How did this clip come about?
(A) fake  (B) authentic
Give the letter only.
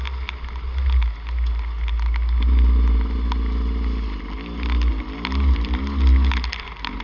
B